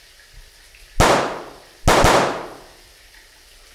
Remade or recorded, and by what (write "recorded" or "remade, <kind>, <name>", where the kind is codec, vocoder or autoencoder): recorded